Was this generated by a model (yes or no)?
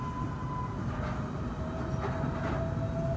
no